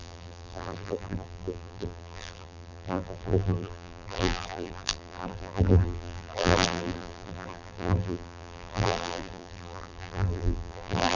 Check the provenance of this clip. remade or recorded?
remade